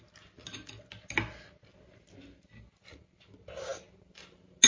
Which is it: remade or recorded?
recorded